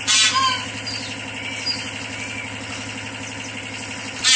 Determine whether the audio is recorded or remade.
recorded